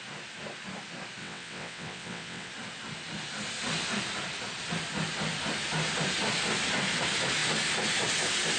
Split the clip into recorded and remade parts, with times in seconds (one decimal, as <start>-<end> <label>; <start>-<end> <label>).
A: 0.0-1.2 recorded; 1.2-2.5 remade; 2.5-8.6 recorded